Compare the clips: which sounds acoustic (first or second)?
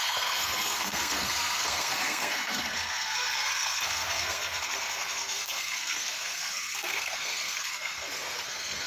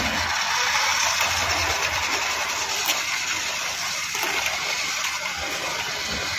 second